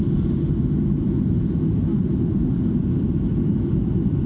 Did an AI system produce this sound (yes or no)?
no